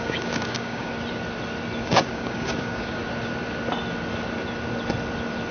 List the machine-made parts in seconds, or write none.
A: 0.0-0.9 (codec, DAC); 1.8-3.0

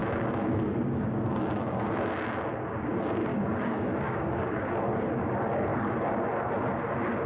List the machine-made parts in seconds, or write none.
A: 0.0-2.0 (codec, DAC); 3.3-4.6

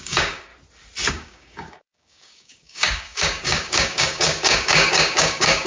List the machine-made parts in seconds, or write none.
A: 0.0-0.5 (codec, DAC); 1.1-5.7